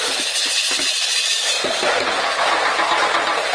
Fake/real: real